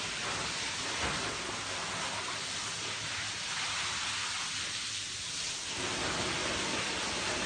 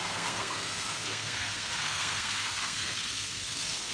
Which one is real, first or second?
first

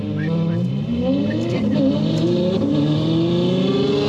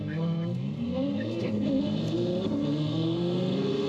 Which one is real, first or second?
first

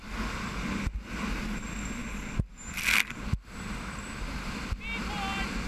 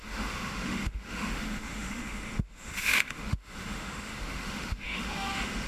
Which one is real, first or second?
first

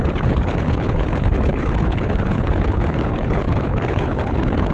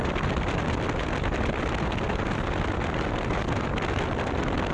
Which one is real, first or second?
second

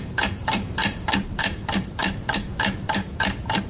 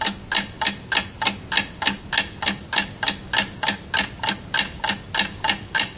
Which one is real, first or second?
second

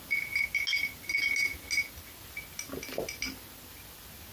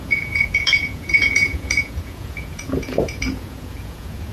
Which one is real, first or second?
first